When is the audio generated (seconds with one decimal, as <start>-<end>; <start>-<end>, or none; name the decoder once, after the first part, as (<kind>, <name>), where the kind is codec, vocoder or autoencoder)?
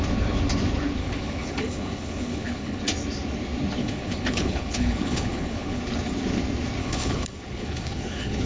1.0-2.8 (codec, HILCodec); 3.8-5.8; 6.8-8.5